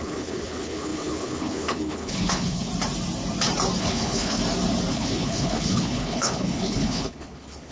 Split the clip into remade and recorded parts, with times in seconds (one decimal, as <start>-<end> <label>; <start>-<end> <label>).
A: 0.0-2.7 remade; 2.7-3.8 recorded; 3.8-4.4 remade; 4.4-4.9 recorded; 4.9-7.7 remade